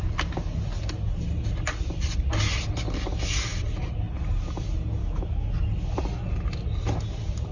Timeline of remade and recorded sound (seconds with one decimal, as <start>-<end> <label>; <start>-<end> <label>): 0.0-5.0 recorded; 5.0-5.5 remade; 5.5-7.5 recorded